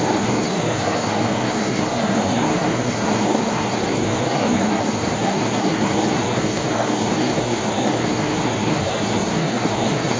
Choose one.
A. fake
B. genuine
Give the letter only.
A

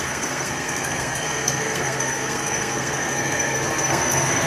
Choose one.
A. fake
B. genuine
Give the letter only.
A